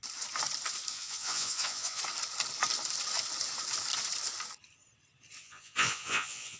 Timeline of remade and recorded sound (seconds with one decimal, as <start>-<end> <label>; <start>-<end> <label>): 0.0-0.9 recorded; 0.9-2.0 remade; 2.0-5.4 recorded; 5.4-6.6 remade